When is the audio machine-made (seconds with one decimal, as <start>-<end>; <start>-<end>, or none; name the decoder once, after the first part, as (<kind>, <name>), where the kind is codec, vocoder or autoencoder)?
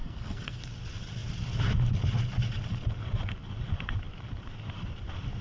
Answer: 0.0-0.6 (codec, SNAC)